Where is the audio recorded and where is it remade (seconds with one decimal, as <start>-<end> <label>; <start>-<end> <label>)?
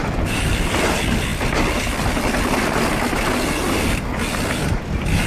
0.0-5.3 recorded